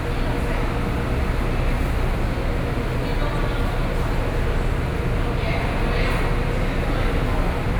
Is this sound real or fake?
real